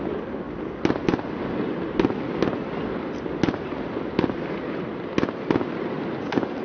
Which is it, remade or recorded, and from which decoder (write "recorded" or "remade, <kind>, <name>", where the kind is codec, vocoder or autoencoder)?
recorded